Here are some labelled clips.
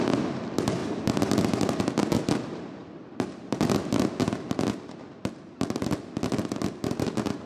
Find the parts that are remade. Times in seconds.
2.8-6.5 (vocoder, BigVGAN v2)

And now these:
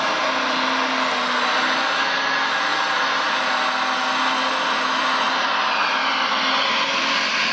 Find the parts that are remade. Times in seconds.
none